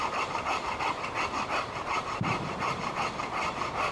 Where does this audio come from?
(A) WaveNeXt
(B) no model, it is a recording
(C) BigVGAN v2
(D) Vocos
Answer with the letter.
C